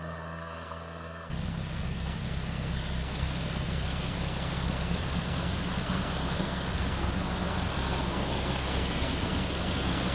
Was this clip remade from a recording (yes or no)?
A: yes